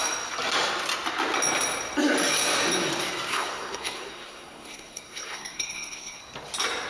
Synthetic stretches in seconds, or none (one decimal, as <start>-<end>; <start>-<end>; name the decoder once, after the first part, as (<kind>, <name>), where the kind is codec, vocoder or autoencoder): 3.3-6.2 (codec, SNAC)